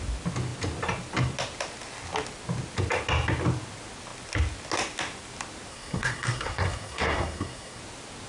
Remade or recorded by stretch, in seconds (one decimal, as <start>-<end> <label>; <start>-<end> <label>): 0.0-5.7 recorded; 5.7-7.8 remade; 7.8-8.3 recorded